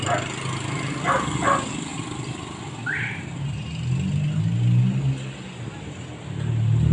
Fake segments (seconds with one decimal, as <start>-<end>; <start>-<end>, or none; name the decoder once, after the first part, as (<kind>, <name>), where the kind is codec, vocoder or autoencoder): none